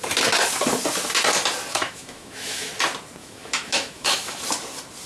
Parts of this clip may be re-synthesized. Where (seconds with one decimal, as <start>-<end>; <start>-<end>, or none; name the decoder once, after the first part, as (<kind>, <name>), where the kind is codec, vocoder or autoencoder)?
1.7-2.7 (autoencoder, DAC-VAE); 3.2-4.4